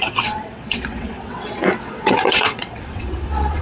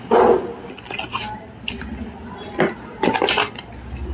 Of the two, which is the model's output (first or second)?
first